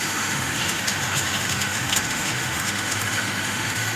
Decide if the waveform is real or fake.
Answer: fake